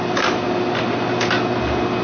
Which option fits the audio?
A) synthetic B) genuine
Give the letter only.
B